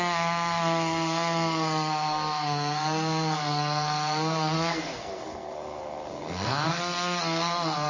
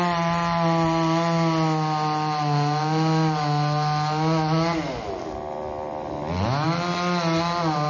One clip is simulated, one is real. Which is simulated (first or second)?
first